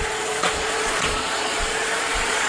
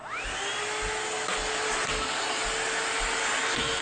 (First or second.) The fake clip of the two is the first